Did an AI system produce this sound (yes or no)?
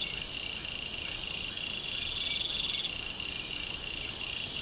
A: no